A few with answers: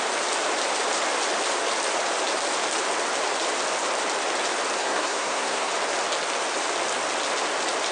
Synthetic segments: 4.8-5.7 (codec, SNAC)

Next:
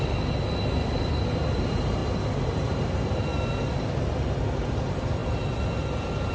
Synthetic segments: none